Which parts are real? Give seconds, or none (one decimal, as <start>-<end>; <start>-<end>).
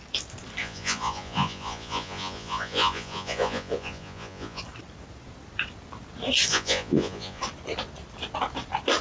0.0-0.6; 4.6-6.5; 7.4-9.0